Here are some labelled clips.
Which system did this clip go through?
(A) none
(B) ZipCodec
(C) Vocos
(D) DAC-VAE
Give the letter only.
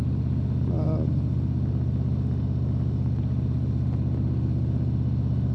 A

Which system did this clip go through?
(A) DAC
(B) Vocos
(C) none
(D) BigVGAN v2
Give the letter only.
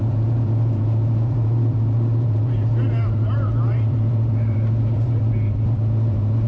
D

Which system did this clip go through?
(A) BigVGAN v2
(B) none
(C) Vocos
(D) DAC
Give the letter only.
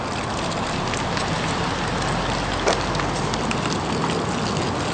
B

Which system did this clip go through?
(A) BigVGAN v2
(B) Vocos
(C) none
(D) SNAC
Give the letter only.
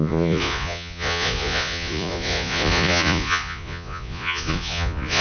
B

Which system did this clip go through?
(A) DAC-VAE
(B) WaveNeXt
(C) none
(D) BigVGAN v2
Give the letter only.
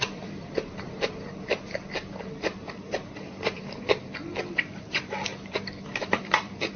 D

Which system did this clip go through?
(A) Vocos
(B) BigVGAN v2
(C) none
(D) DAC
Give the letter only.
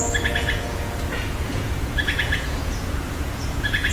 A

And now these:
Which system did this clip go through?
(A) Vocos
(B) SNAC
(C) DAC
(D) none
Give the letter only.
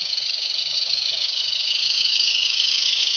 C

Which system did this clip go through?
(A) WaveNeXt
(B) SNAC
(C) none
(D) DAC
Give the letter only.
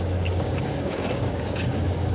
D